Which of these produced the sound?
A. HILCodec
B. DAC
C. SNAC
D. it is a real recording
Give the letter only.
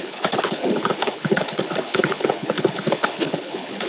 A